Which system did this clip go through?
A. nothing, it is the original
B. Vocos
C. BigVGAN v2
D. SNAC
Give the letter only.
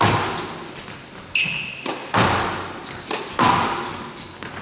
A